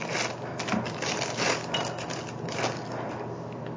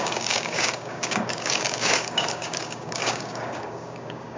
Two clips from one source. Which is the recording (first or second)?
first